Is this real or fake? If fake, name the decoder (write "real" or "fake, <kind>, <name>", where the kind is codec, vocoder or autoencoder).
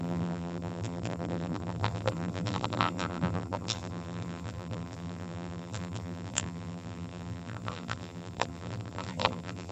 fake, vocoder, BigVGAN v2